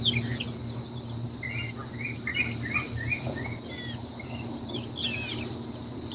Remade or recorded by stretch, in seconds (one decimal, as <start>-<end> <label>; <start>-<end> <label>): 0.0-6.1 recorded